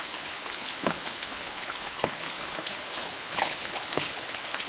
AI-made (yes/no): yes